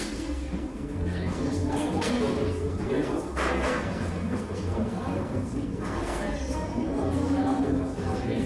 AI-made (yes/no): yes